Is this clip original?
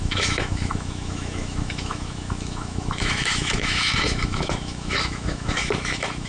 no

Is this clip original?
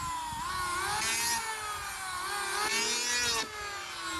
yes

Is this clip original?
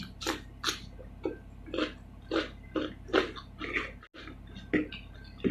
yes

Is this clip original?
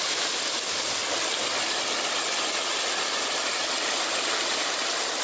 yes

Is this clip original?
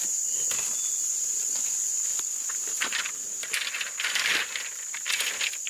yes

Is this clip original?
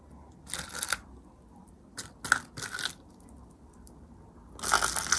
yes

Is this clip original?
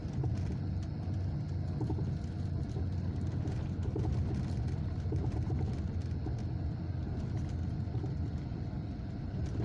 yes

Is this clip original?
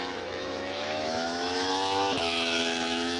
no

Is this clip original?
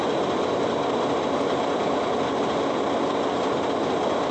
yes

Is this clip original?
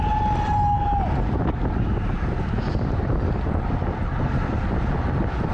yes